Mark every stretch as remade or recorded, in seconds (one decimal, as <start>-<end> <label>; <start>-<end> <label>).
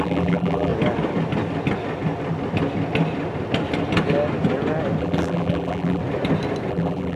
0.0-0.7 remade; 0.7-5.0 recorded; 5.0-6.0 remade; 6.0-6.7 recorded; 6.7-7.2 remade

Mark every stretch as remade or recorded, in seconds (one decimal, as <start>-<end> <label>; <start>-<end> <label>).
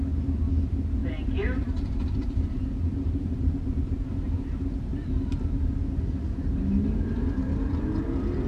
0.0-1.0 recorded; 1.0-4.4 remade; 4.4-4.9 recorded; 4.9-5.8 remade; 5.8-8.5 recorded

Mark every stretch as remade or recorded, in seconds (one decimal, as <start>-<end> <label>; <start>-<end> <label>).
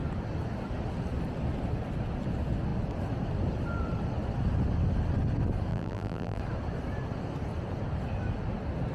0.0-5.7 recorded; 5.7-6.4 remade; 6.4-8.9 recorded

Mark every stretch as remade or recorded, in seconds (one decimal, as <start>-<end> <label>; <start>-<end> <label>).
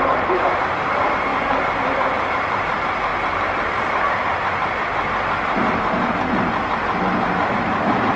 0.0-3.1 remade; 3.1-7.5 recorded; 7.5-8.2 remade